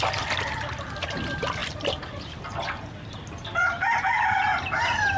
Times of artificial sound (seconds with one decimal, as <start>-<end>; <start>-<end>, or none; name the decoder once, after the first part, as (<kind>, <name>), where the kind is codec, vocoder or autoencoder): 3.5-4.0 (vocoder, BigVGAN v2)